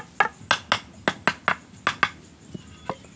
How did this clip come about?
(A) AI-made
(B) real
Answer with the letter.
B